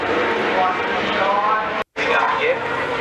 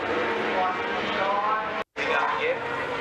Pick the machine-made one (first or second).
first